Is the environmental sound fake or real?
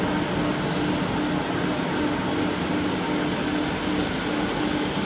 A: real